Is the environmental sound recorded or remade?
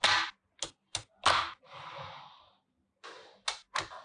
recorded